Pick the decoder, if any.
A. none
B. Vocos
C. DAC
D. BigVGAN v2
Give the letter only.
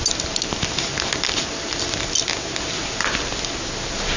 A